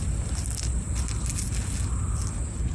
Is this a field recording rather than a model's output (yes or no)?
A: yes